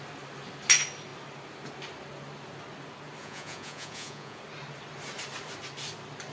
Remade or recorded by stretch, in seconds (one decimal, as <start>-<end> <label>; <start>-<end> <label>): 0.0-3.2 recorded; 3.2-4.4 remade; 4.4-6.3 recorded